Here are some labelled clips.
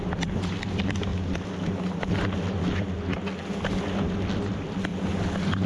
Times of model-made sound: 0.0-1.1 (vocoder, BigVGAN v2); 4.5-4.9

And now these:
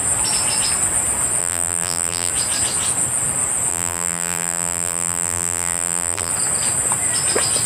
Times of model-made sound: 1.4-2.3 (vocoder, BigVGAN v2); 3.7-6.3

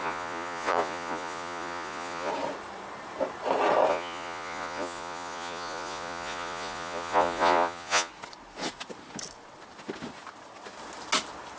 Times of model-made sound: 0.0-2.3 (vocoder, Vocos); 3.9-8.1

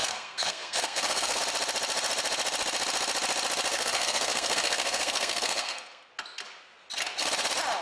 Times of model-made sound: 0.0-1.4 (codec, SNAC); 3.7-6.1